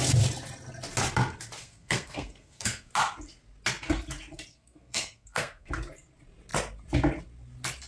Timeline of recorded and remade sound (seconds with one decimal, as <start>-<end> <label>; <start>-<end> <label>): 0.0-1.6 recorded; 1.6-2.9 remade; 2.9-4.5 recorded; 4.5-5.7 remade; 5.7-7.9 recorded